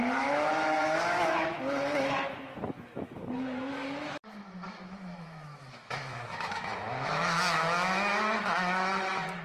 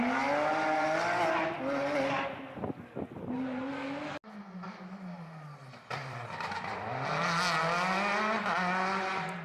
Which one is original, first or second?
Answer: second